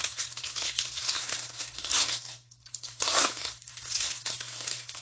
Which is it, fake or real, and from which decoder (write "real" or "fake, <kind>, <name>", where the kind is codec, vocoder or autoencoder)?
fake, codec, SNAC